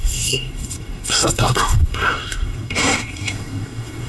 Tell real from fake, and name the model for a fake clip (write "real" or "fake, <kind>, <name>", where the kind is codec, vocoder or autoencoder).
fake, codec, SNAC